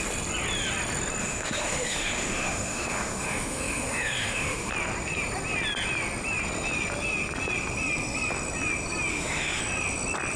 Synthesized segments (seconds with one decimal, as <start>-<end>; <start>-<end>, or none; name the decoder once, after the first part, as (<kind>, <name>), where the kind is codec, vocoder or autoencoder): 1.2-4.7 (autoencoder, DAC-VAE); 9.1-9.6